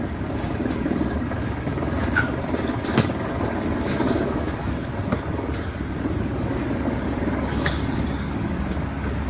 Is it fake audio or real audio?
fake